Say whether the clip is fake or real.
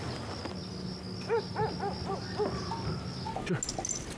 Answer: real